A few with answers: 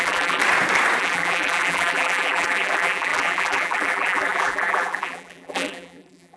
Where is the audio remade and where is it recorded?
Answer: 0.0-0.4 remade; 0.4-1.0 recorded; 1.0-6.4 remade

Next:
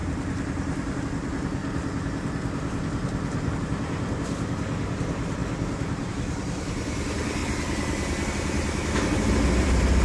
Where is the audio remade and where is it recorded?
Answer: 0.0-1.6 remade; 1.6-3.6 recorded; 3.6-7.4 remade; 7.4-8.3 recorded; 8.3-10.0 remade